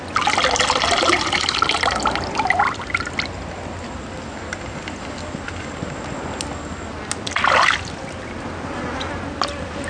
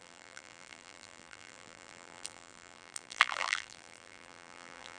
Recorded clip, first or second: first